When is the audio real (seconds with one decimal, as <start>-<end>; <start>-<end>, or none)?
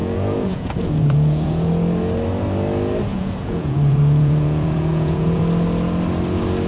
1.7-3.1; 5.4-6.7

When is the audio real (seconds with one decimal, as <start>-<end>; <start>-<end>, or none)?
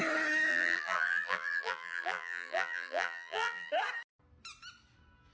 0.0-0.5; 3.7-5.3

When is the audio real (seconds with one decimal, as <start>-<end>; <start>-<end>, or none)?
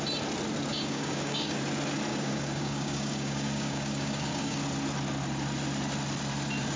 0.0-0.7; 1.6-2.1; 4.6-6.8